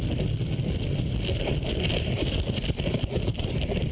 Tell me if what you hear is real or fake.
fake